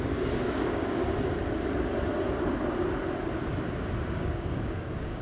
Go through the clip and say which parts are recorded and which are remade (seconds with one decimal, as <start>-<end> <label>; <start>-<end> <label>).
0.0-1.0 remade; 1.0-4.1 recorded; 4.1-5.2 remade